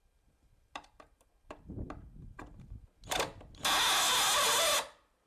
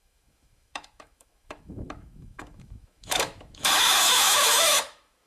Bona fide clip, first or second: first